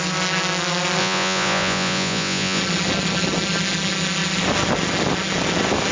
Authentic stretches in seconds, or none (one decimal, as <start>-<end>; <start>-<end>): 0.0-1.0; 2.6-5.9